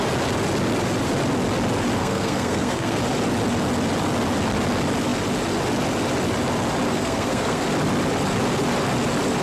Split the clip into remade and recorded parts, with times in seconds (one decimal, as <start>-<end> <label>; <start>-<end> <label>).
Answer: 0.0-2.0 recorded; 2.0-3.0 remade; 3.0-6.9 recorded; 6.9-7.6 remade; 7.6-9.4 recorded